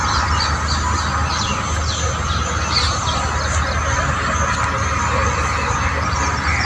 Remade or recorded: recorded